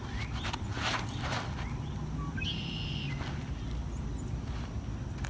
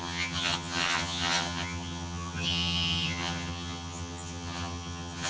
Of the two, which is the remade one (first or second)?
second